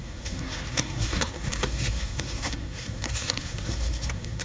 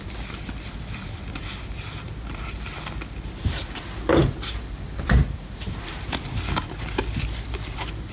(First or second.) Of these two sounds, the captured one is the second